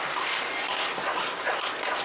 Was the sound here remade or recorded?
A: recorded